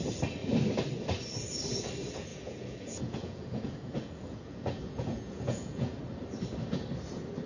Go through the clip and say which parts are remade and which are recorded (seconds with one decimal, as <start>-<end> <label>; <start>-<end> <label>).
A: 0.0-2.3 recorded; 2.3-6.0 remade; 6.0-7.5 recorded